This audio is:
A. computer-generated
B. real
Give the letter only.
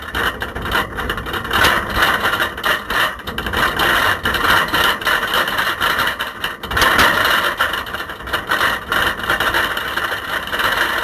B